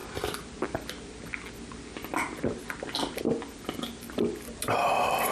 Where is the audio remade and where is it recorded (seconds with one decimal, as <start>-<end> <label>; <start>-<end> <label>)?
0.0-5.3 recorded